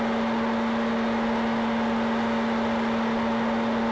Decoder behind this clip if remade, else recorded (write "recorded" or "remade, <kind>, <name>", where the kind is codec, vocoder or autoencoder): recorded